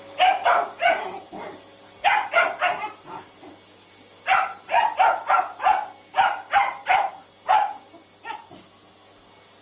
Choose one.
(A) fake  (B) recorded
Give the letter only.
B